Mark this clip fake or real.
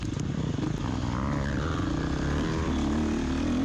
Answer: real